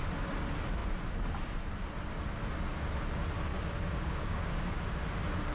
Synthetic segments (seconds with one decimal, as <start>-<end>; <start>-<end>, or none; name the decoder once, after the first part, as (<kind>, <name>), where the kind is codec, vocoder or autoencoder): 3.5-4.8 (codec, DAC)